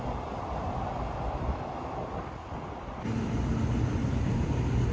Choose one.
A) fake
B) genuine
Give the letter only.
B